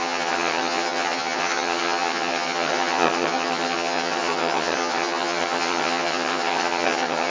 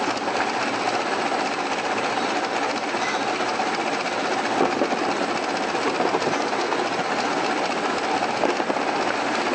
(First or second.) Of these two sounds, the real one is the second